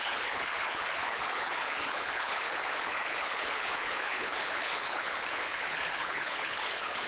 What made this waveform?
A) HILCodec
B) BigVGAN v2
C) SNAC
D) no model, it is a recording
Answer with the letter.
A